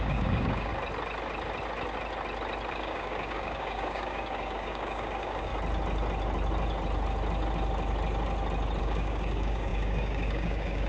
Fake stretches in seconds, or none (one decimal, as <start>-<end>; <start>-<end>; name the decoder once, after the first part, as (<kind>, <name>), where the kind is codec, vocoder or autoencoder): 0.0-0.7 (codec, DAC); 2.7-5.5; 8.8-10.9